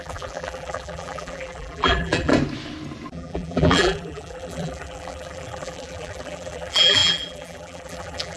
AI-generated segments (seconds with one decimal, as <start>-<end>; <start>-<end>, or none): 0.0-2.3; 3.1-8.4